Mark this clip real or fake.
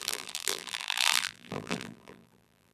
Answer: fake